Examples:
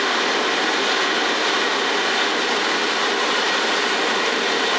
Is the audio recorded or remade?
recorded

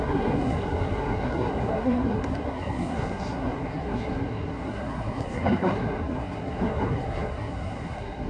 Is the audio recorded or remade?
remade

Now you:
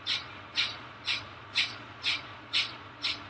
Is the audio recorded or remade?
remade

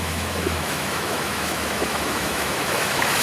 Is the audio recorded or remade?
remade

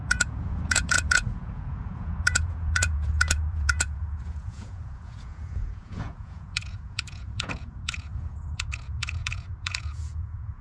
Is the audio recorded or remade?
remade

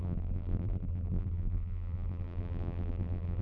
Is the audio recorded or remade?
remade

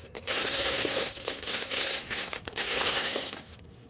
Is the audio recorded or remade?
remade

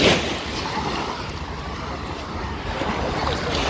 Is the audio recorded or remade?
recorded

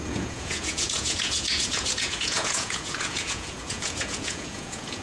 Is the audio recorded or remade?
remade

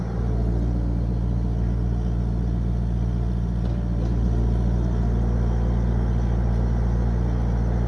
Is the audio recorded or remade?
recorded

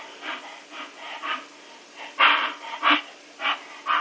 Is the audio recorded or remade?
remade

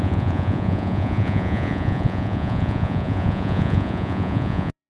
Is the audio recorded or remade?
remade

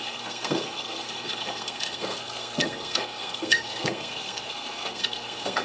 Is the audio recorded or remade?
remade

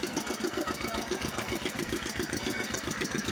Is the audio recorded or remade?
remade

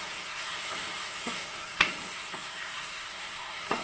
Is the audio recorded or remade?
remade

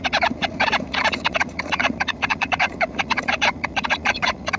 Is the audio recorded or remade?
remade